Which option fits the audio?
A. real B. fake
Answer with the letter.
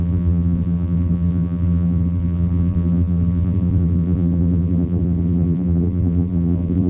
B